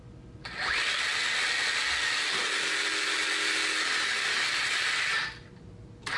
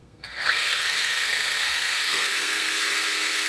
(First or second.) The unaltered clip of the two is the first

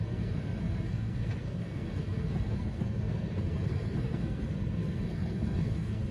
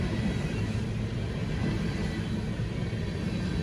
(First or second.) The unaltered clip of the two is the second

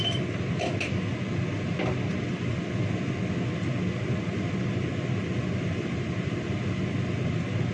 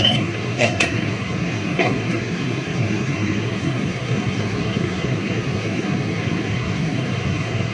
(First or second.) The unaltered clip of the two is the first